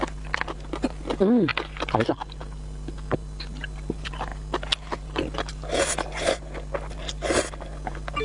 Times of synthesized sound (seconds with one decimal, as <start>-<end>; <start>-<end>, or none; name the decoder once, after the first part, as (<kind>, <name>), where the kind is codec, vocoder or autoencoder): none